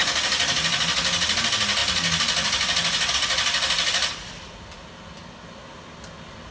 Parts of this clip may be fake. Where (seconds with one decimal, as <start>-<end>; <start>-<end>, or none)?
1.4-1.8; 3.1-5.2

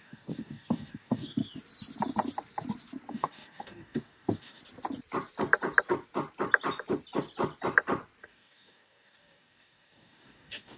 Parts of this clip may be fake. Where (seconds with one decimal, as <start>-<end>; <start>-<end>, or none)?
0.0-1.4; 3.1-4.6; 8.2-10.8